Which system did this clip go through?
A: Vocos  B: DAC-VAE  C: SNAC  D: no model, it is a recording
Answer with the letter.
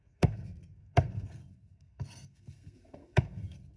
C